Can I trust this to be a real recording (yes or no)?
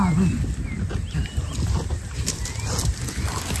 yes